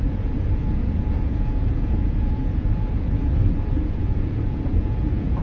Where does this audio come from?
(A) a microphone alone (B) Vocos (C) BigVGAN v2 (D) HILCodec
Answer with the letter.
B